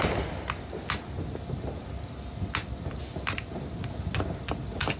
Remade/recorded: recorded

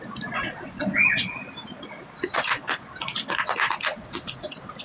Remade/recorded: recorded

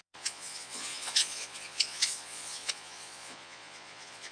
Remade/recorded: remade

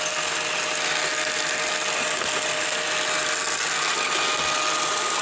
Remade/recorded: recorded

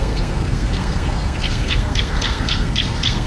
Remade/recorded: remade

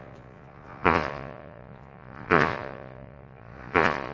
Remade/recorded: remade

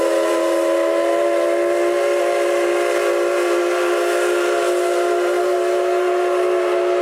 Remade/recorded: recorded